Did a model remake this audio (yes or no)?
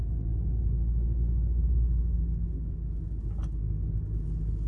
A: no